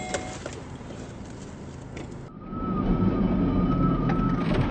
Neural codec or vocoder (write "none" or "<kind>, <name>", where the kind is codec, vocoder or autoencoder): none